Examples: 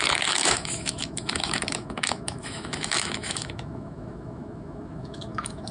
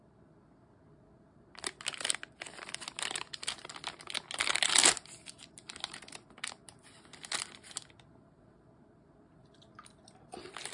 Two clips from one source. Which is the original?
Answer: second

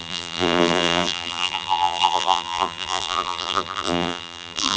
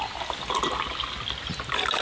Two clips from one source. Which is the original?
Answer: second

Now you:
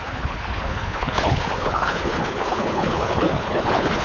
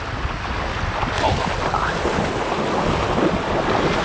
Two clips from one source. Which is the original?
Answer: second